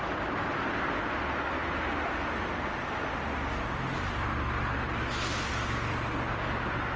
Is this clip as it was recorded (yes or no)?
yes